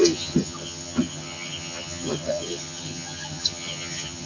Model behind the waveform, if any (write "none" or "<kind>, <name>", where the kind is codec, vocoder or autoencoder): vocoder, HiFi-GAN